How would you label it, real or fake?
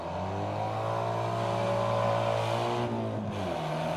real